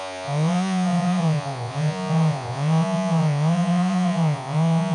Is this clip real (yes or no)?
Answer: no